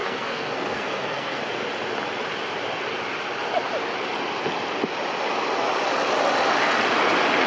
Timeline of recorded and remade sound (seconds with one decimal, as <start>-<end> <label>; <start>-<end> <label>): 0.0-1.4 remade; 1.4-7.5 recorded